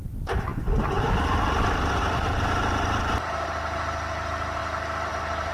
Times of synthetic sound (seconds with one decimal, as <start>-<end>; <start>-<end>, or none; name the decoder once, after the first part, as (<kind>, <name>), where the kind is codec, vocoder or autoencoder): 0.0-0.5 (vocoder, BigVGAN v2); 1.7-4.6; 5.1-5.5